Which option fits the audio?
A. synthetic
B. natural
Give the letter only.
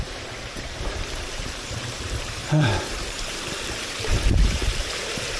A